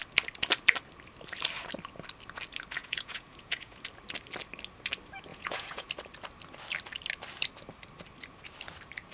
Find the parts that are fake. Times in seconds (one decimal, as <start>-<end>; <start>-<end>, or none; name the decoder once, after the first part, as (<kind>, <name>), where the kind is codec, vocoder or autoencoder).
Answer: 2.8-3.8 (vocoder, Vocos); 5.3-5.9